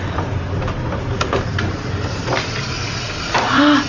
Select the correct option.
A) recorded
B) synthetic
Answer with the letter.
B